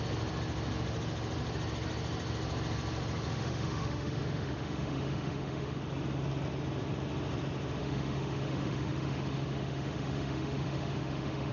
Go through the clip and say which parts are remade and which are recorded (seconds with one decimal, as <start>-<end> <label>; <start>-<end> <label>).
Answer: 0.0-3.3 recorded; 3.3-5.8 remade; 5.8-7.8 recorded; 7.8-11.5 remade